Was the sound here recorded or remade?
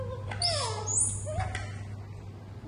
recorded